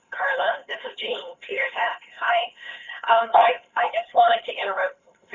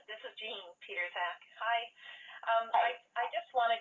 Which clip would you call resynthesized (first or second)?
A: first